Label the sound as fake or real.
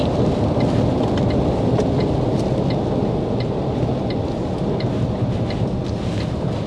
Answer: real